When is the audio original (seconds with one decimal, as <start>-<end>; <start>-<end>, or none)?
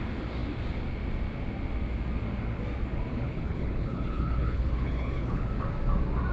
0.0-3.1; 5.5-6.3